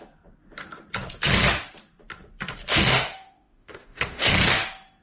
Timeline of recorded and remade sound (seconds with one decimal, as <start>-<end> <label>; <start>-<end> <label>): 0.0-2.7 recorded; 2.7-4.3 remade; 4.3-5.0 recorded